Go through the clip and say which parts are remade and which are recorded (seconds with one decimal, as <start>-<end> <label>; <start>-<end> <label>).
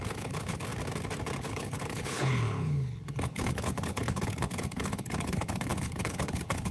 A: 0.0-0.7 remade; 0.7-1.4 recorded; 1.4-6.7 remade